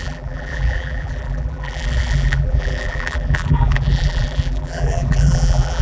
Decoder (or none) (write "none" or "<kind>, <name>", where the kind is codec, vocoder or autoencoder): vocoder, BigVGAN v2